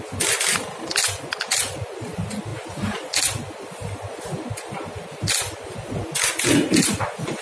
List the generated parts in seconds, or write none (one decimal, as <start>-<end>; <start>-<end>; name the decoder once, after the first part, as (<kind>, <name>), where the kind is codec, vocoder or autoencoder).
none